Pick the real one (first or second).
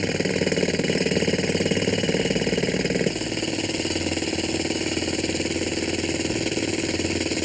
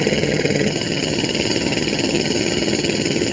first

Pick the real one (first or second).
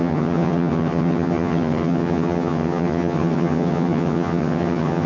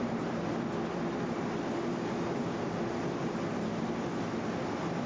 second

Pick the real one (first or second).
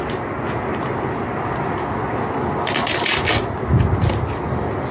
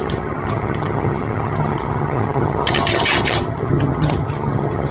first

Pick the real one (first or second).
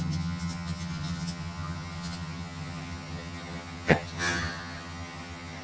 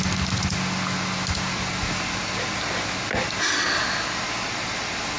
second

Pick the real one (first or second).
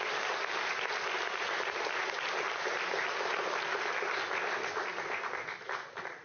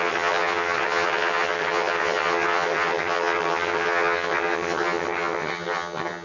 first